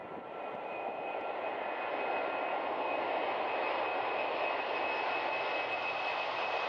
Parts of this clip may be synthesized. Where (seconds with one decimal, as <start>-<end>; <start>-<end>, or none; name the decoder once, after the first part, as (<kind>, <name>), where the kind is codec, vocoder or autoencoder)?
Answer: 0.0-3.2 (vocoder, BigVGAN v2); 5.8-6.7